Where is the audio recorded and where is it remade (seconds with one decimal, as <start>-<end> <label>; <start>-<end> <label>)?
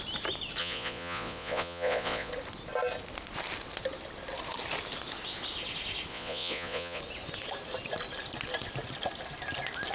0.0-0.6 recorded; 0.6-2.3 remade; 2.3-6.1 recorded; 6.1-7.0 remade; 7.0-9.9 recorded